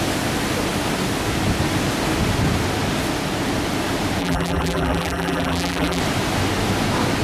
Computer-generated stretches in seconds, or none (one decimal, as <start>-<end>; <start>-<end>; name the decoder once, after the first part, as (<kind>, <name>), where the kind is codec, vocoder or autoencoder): 4.2-6.0 (vocoder, BigVGAN v2)